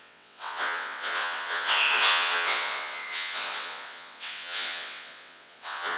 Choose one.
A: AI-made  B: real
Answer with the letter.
A